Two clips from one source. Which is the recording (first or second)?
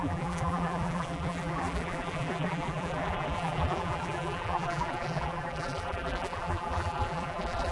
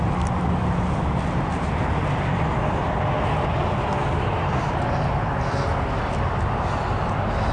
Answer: second